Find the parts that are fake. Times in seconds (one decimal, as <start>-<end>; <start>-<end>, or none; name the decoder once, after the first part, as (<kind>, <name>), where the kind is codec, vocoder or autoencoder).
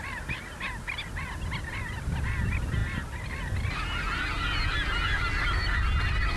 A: none